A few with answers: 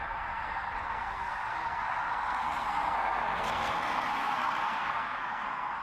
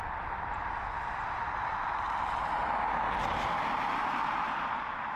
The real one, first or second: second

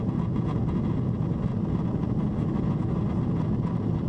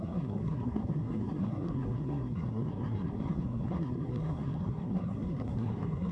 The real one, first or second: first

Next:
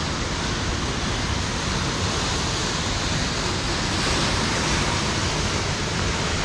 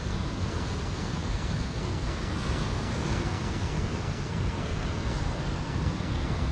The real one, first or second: first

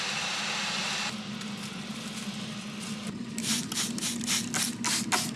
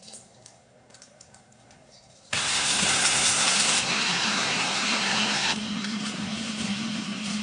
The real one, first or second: first